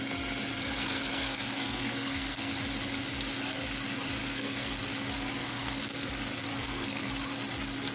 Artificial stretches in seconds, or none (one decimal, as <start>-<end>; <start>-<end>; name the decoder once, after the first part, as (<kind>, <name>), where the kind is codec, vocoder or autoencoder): 0.8-2.5 (codec, SNAC); 4.2-4.8; 5.4-6.1; 6.5-7.1